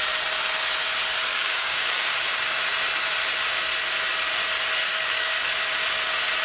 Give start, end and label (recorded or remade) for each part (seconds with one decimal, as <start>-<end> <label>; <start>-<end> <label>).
0.0-1.3 recorded; 1.3-2.2 remade; 2.2-4.8 recorded; 4.8-5.4 remade; 5.4-6.4 recorded